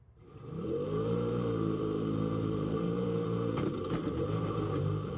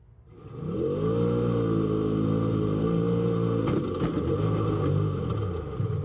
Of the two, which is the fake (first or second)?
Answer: first